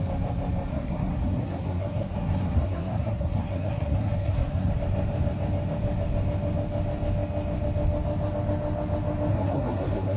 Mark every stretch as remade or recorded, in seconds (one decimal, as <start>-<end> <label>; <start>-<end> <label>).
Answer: 0.0-0.7 recorded; 0.7-4.7 remade; 4.7-9.3 recorded; 9.3-10.2 remade